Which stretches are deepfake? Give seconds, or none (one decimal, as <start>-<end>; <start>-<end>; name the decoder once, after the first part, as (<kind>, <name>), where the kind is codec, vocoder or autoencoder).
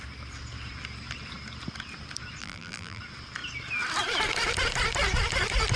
2.4-3.0 (vocoder, BigVGAN v2)